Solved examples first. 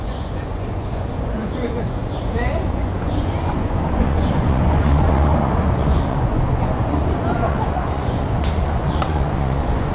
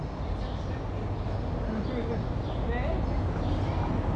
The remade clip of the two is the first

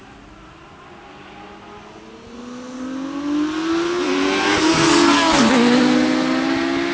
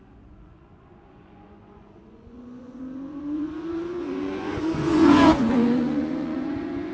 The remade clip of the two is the second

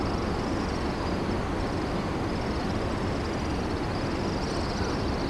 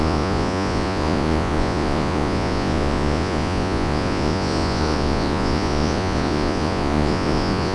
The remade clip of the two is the second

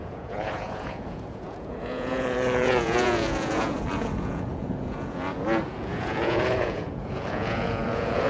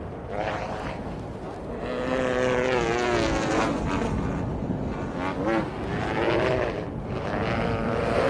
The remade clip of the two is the first